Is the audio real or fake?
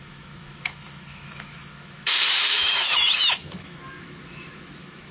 fake